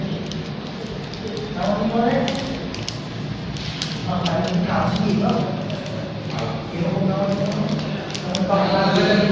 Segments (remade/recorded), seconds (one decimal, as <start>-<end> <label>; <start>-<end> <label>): 0.0-4.0 recorded; 4.0-5.5 remade; 5.5-9.3 recorded

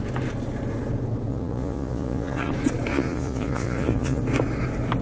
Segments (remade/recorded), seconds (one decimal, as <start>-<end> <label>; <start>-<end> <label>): 0.0-1.3 recorded; 1.3-2.5 remade; 2.5-2.9 recorded; 2.9-4.2 remade; 4.2-5.0 recorded

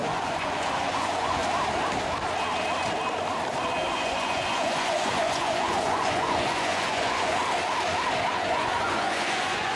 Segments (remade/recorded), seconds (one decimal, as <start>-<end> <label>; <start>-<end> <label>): 0.0-1.4 remade; 1.4-3.9 recorded; 3.9-7.4 remade; 7.4-8.3 recorded; 8.3-9.8 remade

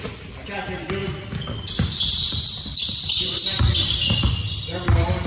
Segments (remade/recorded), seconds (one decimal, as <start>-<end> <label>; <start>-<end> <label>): 0.0-5.3 recorded

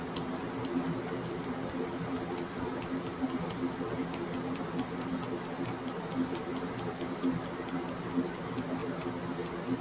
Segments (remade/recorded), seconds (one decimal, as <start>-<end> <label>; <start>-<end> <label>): 0.0-9.8 recorded

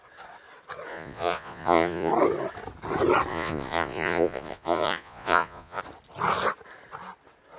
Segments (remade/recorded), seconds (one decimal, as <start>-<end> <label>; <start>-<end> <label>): 0.0-0.9 recorded; 0.9-2.1 remade; 2.1-3.3 recorded; 3.3-5.8 remade; 5.8-7.6 recorded